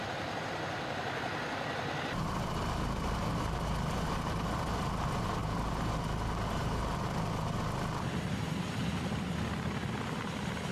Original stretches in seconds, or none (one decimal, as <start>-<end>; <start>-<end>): 0.0-10.7